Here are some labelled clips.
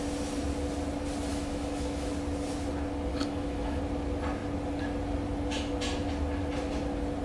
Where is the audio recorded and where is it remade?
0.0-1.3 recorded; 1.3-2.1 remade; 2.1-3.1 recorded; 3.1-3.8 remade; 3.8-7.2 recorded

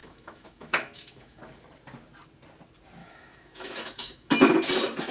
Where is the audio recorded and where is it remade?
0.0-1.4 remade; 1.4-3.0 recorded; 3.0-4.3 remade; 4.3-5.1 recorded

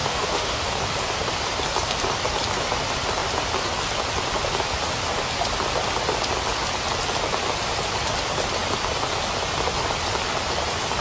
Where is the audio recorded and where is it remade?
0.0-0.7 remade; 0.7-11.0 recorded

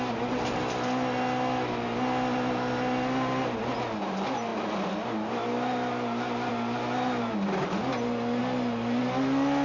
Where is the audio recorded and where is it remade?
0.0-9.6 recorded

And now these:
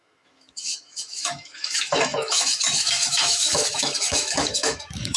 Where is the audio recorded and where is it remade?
0.0-5.2 remade

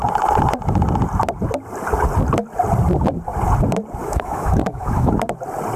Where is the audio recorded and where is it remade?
0.0-4.0 recorded; 4.0-5.1 remade; 5.1-5.8 recorded

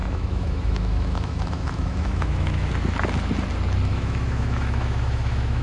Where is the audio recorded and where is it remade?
0.0-2.7 remade; 2.7-3.9 recorded; 3.9-5.6 remade

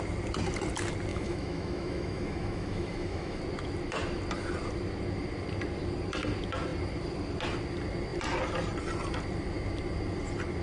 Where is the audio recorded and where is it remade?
0.0-1.1 recorded; 1.1-3.4 remade; 3.4-10.6 recorded